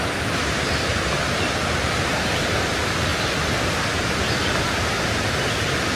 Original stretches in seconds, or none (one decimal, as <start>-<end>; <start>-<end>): 0.0-0.9; 2.7-3.1; 3.8-5.9